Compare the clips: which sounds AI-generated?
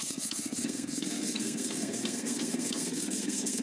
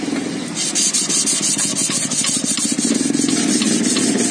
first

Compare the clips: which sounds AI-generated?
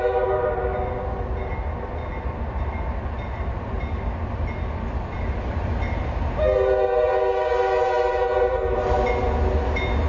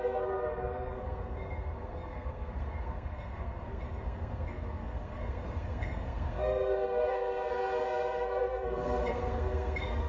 second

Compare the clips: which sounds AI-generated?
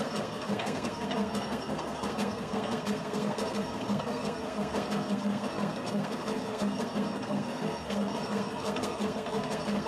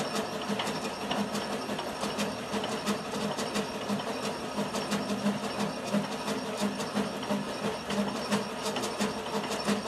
first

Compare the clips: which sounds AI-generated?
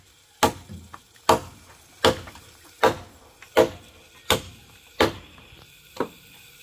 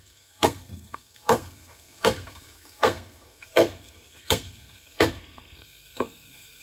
second